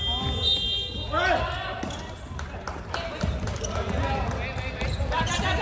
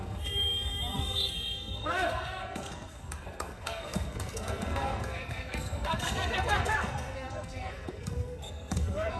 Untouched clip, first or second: first